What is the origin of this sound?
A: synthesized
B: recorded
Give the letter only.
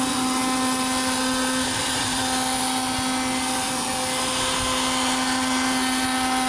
B